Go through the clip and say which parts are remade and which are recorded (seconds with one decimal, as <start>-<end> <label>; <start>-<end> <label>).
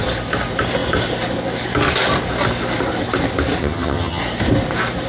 0.0-3.6 recorded; 3.6-4.2 remade; 4.2-5.1 recorded